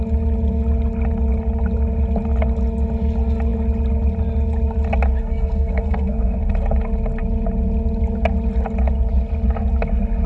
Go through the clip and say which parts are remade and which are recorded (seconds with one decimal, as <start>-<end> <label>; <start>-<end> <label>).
0.0-5.2 recorded; 5.2-6.5 remade; 6.5-10.3 recorded